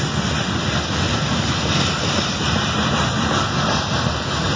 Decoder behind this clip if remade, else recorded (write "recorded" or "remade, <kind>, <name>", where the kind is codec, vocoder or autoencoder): recorded